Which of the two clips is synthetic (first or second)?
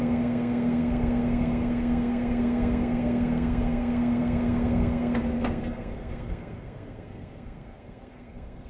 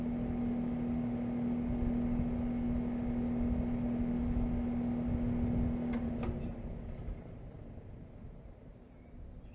first